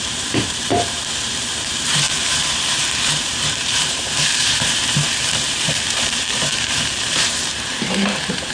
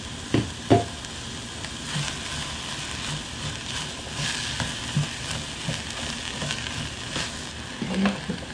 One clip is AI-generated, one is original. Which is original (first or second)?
second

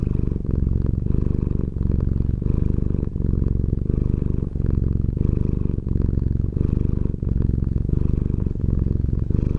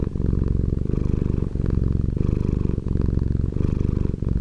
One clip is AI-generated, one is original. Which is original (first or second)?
first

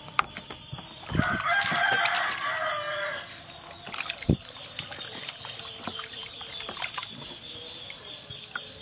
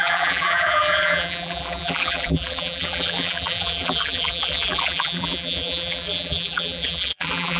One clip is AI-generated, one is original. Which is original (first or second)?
first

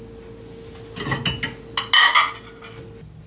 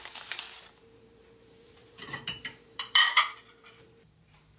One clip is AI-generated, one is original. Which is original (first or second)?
first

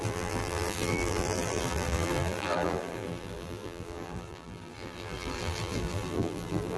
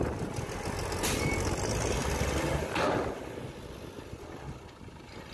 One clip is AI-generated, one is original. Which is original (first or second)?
second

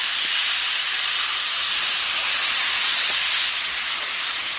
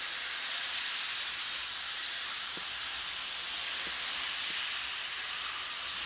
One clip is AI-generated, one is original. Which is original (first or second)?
second